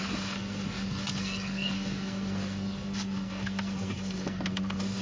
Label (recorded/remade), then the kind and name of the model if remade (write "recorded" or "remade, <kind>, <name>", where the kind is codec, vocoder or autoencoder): remade, codec, SNAC